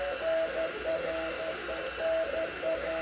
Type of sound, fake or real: real